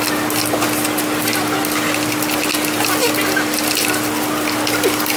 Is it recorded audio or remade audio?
recorded